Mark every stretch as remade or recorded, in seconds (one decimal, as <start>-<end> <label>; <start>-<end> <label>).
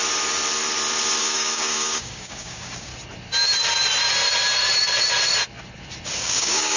0.0-1.2 recorded; 1.2-2.9 remade; 2.9-6.2 recorded; 6.2-6.8 remade